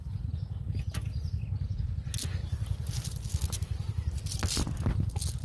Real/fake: real